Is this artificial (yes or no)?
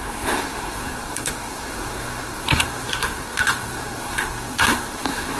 yes